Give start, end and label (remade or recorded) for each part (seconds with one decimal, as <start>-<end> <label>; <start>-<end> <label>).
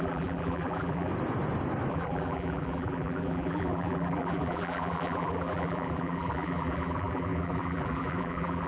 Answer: 0.0-1.1 remade; 1.1-1.9 recorded; 1.9-8.7 remade